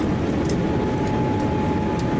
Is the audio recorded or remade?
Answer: recorded